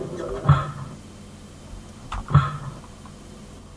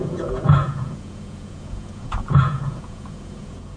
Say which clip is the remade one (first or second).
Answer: second